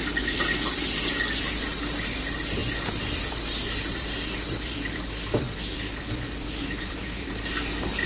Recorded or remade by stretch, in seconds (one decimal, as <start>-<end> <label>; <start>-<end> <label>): 0.0-2.6 recorded; 2.6-7.3 remade; 7.3-8.1 recorded